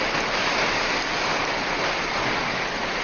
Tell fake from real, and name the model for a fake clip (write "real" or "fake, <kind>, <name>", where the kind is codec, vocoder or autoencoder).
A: real